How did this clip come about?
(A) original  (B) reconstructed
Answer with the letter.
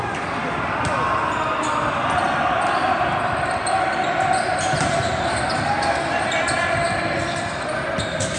A